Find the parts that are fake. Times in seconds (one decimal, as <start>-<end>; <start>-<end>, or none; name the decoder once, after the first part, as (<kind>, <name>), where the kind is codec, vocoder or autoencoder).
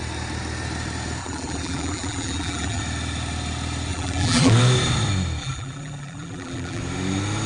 1.2-2.8 (vocoder, BigVGAN v2); 3.9-4.5; 5.4-6.8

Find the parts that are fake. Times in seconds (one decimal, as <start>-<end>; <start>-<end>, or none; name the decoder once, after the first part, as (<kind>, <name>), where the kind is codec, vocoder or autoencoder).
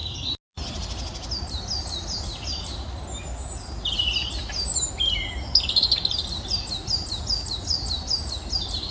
none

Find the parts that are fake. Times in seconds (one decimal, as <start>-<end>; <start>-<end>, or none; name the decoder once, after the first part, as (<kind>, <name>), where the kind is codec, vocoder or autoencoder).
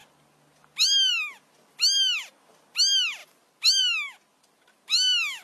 none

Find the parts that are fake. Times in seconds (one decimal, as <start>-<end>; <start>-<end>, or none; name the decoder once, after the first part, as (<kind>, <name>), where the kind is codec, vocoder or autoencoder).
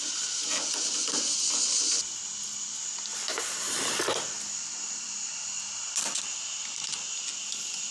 none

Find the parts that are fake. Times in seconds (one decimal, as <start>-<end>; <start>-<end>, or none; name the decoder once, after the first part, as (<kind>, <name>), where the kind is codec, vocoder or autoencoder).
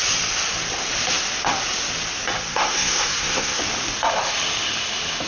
2.5-3.6 (codec, SNAC)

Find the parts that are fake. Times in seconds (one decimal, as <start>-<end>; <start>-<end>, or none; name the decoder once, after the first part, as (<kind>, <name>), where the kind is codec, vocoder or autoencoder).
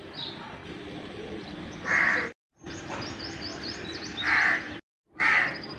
none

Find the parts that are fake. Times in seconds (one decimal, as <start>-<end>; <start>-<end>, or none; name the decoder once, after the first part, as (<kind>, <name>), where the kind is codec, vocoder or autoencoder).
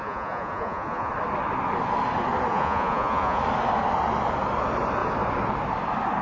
0.0-1.1 (vocoder, Vocos); 2.5-3.4